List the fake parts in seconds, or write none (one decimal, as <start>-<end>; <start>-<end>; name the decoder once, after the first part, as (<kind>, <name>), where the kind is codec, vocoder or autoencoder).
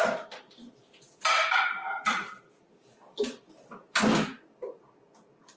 none